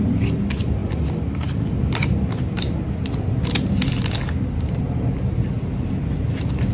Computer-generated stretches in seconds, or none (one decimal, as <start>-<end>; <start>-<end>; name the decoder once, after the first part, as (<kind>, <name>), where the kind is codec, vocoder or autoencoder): none

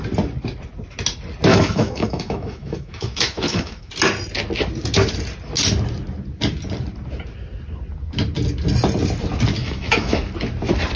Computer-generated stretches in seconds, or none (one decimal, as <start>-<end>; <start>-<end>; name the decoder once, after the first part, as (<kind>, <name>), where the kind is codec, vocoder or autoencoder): 1.5-3.9 (autoencoder, DAC-VAE); 9.6-10.3

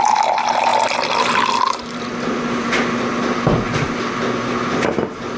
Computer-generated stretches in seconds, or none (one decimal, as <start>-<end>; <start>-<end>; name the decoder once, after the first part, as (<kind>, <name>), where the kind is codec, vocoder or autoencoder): none

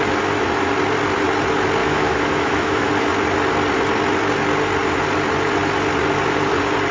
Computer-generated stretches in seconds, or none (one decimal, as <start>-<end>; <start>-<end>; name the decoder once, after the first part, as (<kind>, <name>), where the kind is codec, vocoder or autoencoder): 1.8-2.9 (autoencoder, DAC-VAE)